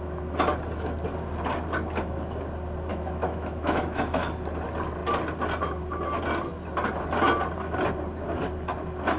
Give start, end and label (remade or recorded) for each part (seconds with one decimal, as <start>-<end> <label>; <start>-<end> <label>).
0.0-2.9 recorded; 2.9-4.3 remade; 4.3-9.2 recorded